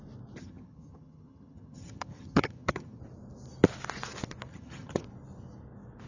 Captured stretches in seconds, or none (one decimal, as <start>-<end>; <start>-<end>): 0.0-0.4; 3.0-4.5; 5.0-6.1